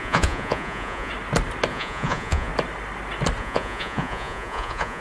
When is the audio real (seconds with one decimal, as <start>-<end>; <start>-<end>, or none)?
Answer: 1.1-1.7; 2.5-3.4